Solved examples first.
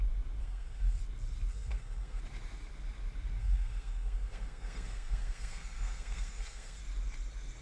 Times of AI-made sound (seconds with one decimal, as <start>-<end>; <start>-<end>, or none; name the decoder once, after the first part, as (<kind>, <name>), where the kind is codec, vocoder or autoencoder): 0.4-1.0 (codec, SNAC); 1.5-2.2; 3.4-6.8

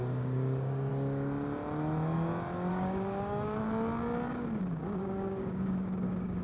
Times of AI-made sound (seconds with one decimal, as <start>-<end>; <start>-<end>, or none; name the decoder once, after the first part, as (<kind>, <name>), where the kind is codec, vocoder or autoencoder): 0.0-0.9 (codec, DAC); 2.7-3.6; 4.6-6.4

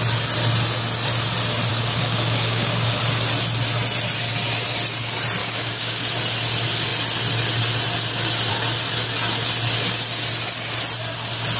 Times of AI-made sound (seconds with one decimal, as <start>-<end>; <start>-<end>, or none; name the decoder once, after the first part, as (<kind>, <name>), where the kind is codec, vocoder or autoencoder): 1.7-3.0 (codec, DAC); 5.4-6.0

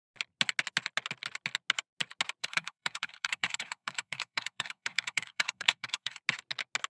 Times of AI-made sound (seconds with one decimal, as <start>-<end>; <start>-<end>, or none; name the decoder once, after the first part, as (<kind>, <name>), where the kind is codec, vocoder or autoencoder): 2.4-6.2 (codec, SNAC)